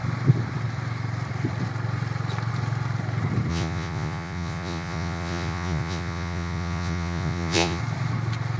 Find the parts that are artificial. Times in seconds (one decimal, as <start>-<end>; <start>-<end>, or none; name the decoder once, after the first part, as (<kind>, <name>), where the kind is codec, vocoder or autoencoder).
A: 3.5-7.8 (vocoder, Vocos)